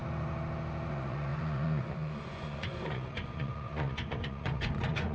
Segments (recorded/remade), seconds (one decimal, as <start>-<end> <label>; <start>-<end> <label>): 0.0-0.9 recorded; 0.9-5.1 remade